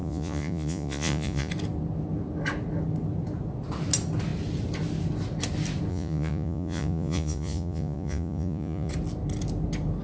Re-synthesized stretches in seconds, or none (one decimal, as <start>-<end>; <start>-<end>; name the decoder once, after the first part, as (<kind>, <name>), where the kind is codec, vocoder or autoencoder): 0.0-1.5 (vocoder, Vocos); 5.9-8.9